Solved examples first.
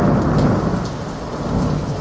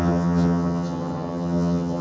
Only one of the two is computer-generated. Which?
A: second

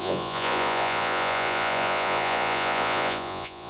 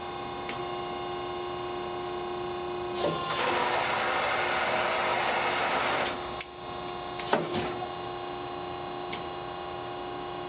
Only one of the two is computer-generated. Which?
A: first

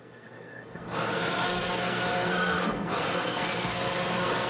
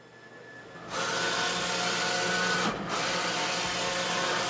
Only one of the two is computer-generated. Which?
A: first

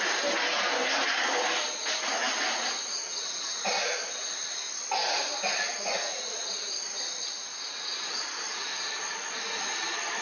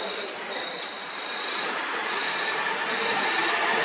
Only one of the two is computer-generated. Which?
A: second